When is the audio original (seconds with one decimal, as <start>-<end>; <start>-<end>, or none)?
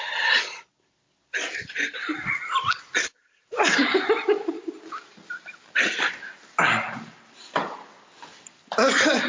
0.0-9.3